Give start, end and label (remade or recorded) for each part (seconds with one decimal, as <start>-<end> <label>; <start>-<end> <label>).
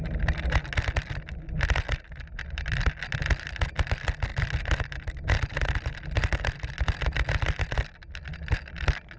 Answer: 0.0-9.2 recorded